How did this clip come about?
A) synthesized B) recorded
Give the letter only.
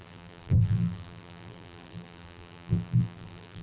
A